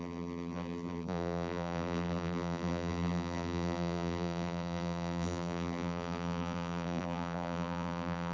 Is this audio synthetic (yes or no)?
yes